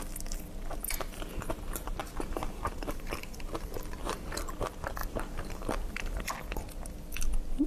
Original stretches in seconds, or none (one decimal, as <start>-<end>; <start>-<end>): 0.0-2.0; 4.4-5.0; 6.3-7.7